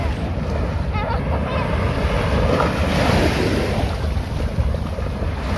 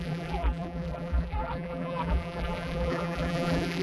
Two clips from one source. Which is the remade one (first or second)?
second